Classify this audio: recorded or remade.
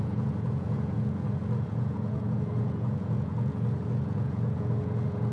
remade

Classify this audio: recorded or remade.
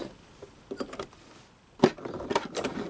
recorded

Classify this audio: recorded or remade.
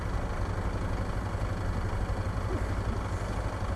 recorded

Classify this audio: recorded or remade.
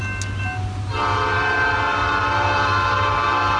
recorded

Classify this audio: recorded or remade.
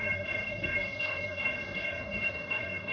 remade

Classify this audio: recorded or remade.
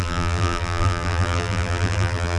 remade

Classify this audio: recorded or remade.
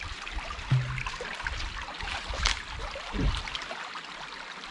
recorded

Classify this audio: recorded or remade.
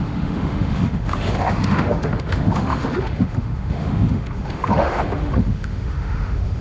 remade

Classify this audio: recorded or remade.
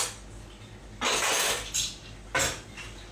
recorded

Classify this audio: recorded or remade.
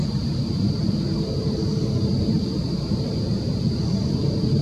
remade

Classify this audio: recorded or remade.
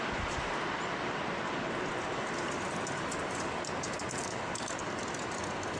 recorded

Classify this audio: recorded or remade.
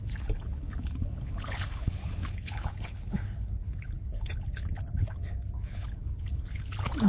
remade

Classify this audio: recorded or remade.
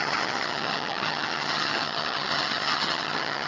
remade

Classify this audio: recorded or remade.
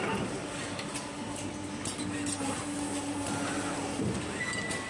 recorded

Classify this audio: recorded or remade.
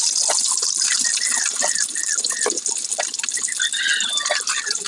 recorded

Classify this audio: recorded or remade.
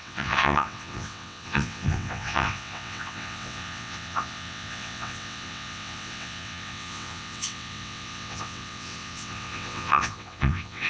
remade